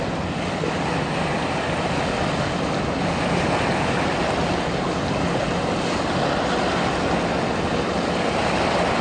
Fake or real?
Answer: real